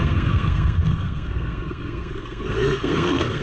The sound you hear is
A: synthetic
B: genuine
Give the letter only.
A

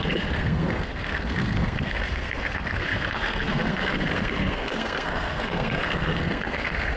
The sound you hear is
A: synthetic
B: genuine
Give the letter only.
A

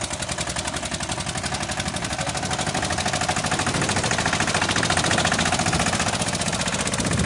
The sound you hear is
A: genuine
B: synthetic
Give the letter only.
A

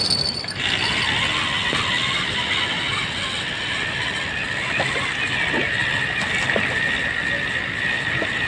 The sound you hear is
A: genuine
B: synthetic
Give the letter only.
A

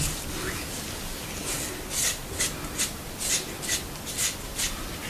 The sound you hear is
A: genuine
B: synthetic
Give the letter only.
A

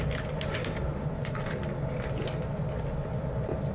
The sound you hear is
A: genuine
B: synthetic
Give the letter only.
A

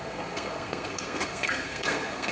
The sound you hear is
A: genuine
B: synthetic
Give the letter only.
B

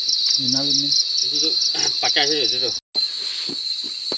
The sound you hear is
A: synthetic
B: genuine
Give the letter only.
B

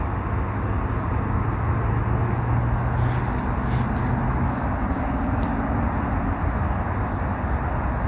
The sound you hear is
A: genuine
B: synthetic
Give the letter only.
A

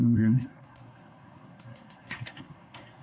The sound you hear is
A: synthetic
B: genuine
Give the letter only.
A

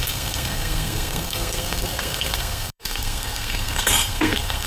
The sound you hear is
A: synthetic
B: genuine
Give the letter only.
A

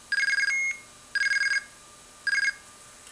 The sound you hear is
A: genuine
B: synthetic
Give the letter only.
A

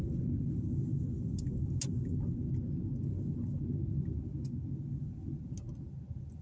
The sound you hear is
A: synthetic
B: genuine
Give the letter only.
B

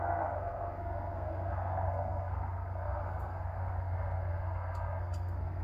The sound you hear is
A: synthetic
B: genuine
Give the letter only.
A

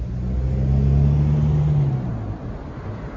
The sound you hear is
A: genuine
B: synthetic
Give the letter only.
A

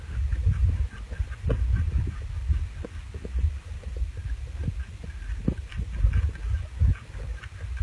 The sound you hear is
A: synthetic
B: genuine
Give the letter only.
B